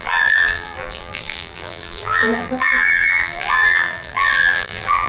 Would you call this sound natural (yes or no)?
no